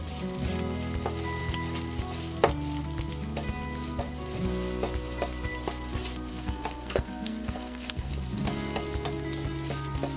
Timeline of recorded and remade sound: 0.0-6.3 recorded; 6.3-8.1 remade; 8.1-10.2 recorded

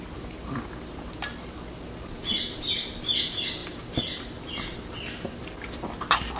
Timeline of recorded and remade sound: 0.0-6.4 recorded

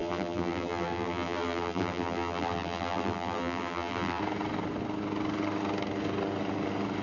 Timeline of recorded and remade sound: 0.0-4.2 remade; 4.2-7.0 recorded

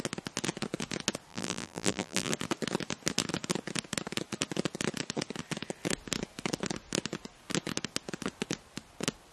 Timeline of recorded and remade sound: 0.0-1.3 recorded; 1.3-2.3 remade; 2.3-9.3 recorded

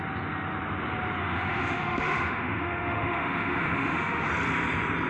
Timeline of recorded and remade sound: 0.0-1.2 recorded; 1.2-4.3 remade; 4.3-5.1 recorded